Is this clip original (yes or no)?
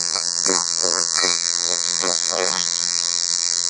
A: no